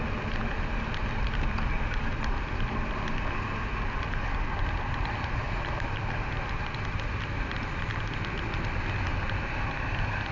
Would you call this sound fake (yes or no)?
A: no